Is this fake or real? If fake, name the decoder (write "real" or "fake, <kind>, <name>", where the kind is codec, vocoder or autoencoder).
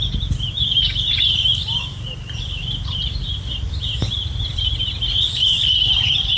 fake, vocoder, BigVGAN v2